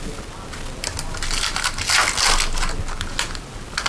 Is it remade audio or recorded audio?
recorded